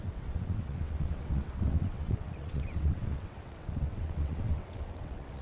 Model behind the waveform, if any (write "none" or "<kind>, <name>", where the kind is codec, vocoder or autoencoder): vocoder, WaveNeXt